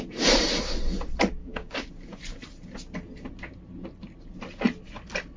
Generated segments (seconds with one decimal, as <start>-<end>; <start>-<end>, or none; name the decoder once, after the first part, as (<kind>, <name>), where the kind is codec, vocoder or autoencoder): 1.4-1.9 (codec, DAC)